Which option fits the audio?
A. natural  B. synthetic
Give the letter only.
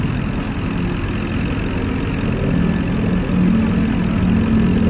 A